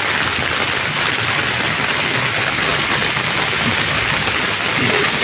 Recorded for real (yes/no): yes